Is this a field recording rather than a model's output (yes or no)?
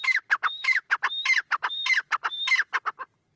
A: yes